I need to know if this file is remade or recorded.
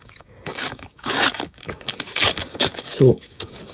remade